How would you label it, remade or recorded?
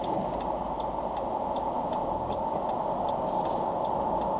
recorded